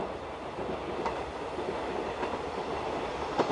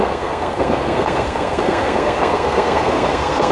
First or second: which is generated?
second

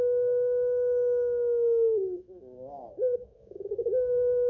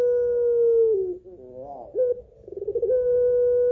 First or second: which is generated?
first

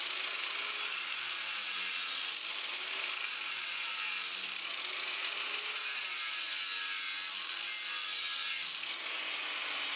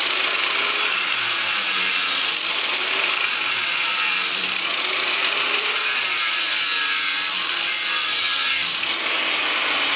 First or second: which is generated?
second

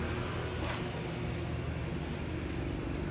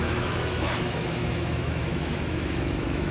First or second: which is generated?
second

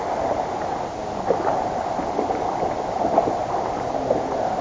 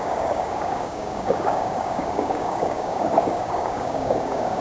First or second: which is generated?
second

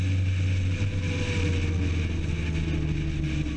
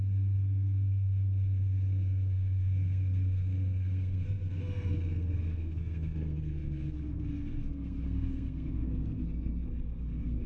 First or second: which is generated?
second